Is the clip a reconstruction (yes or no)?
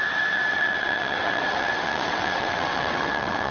yes